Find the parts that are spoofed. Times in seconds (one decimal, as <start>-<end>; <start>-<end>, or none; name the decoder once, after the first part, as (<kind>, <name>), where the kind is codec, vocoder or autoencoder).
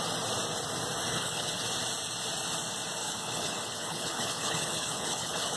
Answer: 1.1-1.6 (codec, HILCodec); 3.0-5.6